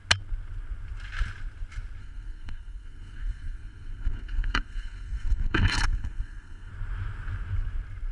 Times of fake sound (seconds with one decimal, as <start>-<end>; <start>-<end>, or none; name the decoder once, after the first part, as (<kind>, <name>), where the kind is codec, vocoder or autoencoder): 2.0-6.7 (codec, SNAC)